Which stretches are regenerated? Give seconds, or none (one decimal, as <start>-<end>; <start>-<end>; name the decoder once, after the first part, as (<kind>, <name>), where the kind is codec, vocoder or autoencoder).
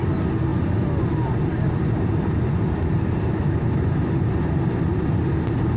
none